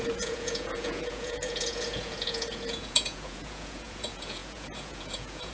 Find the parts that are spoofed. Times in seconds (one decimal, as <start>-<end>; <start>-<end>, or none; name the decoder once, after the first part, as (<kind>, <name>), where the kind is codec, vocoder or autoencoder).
0.0-5.5 (vocoder, Vocos)